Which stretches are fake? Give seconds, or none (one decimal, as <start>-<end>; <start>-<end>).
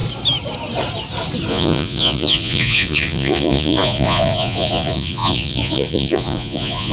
1.5-6.9